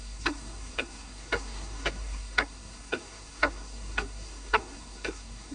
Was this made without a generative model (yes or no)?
no